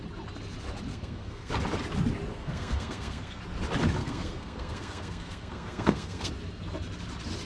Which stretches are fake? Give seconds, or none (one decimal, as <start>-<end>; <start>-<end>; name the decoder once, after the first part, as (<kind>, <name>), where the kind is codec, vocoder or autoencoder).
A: 0.9-1.5 (codec, SNAC); 2.3-3.4; 4.0-6.3